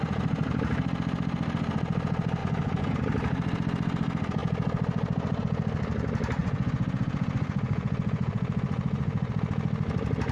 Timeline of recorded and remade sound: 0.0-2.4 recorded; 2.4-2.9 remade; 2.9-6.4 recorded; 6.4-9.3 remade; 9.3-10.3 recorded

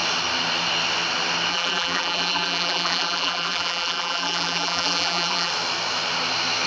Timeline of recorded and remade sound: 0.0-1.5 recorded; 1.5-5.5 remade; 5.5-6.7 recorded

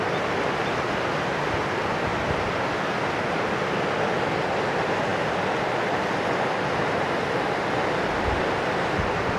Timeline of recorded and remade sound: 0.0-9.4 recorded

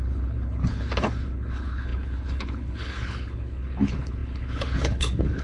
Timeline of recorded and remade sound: 0.0-5.4 remade

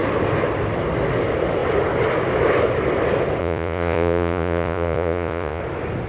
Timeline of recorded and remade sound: 0.0-3.4 recorded; 3.4-5.6 remade; 5.6-6.1 recorded